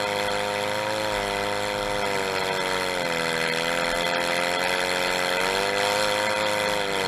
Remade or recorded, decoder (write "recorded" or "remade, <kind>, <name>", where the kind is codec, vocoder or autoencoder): recorded